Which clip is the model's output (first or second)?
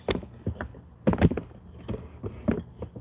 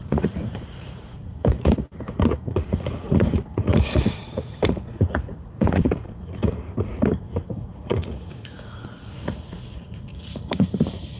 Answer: second